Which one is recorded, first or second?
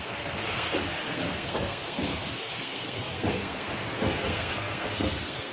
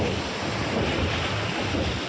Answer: second